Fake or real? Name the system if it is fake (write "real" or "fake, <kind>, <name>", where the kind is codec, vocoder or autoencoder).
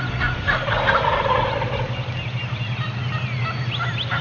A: real